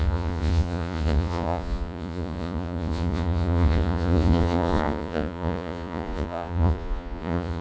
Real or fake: fake